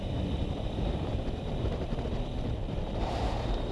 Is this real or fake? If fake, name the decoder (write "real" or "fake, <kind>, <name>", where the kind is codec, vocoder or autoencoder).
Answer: fake, vocoder, BigVGAN v2